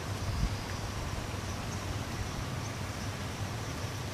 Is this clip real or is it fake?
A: real